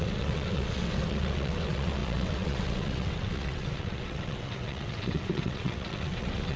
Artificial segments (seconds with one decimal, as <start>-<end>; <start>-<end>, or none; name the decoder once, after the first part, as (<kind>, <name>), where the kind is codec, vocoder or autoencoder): 0.0-6.6 (vocoder, WaveNeXt)

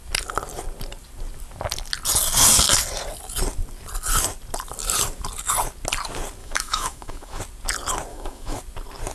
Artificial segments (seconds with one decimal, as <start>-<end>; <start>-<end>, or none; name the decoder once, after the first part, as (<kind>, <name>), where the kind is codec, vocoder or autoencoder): 6.4-7.4 (autoencoder, DAC-VAE); 8.1-8.6

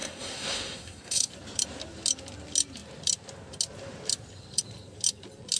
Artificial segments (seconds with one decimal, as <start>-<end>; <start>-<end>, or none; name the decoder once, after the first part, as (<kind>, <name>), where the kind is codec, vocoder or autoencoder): 0.0-1.3 (codec, SNAC)

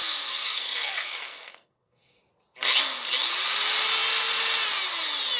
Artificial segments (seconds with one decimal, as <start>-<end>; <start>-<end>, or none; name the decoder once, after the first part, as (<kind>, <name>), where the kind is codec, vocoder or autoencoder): 0.0-2.2 (codec, SNAC)

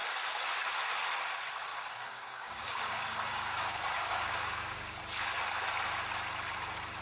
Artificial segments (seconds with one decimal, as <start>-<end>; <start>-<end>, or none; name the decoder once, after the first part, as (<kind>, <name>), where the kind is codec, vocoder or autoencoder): 1.7-5.0 (codec, DAC)

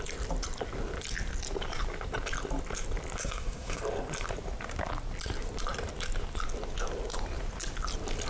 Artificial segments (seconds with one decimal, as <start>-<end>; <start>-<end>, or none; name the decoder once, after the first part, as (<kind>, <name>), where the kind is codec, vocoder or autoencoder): 3.2-3.8 (codec, SNAC)

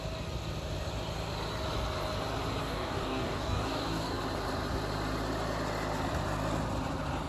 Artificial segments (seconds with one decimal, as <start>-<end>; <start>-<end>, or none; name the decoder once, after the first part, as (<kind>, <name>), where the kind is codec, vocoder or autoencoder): 2.6-4.2 (codec, DAC)

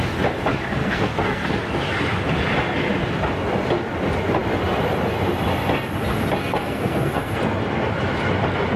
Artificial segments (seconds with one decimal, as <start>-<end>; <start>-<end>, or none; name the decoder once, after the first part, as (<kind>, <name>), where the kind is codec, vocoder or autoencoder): 0.8-1.5 (codec, SNAC); 6.4-7.4